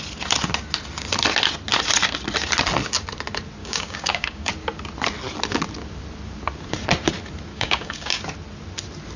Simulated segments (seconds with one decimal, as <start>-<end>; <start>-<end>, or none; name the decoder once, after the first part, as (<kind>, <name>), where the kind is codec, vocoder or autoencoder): 3.6-4.5 (codec, DAC); 7.5-8.2

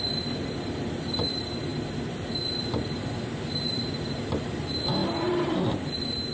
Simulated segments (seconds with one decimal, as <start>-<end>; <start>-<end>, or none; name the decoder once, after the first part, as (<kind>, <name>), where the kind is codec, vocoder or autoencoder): none

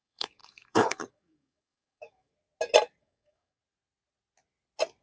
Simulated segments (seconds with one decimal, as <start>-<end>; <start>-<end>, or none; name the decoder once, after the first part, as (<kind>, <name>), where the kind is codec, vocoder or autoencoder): 0.0-2.3 (codec, DAC); 3.0-3.6

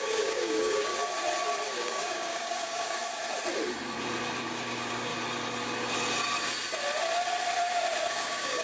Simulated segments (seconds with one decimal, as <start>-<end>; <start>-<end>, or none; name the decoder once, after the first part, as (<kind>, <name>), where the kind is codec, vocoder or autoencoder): 0.0-0.9 (codec, DAC); 1.7-3.0; 4.5-5.1; 8.1-8.6

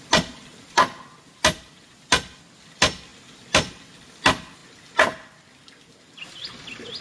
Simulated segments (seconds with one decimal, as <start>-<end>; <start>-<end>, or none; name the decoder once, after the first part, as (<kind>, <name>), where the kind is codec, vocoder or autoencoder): none

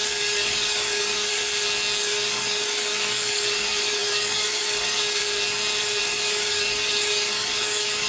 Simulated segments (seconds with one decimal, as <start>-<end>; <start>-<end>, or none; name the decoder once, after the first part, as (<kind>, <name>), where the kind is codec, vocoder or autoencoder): 0.0-1.4 (codec, DAC); 2.0-5.2; 6.0-8.1

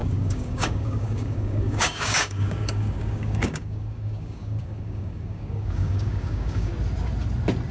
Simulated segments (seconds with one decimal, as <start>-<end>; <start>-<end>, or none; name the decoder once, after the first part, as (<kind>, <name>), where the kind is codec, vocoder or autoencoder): 0.0-6.7 (codec, DAC)

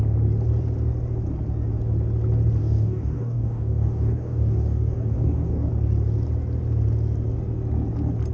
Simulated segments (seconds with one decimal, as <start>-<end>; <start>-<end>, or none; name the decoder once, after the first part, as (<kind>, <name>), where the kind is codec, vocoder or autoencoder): 2.6-5.7 (codec, DAC)